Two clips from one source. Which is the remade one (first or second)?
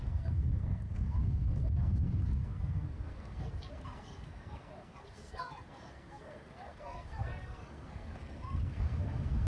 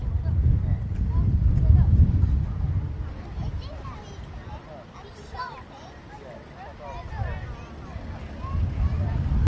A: first